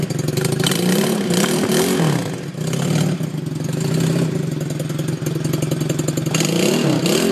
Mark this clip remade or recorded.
recorded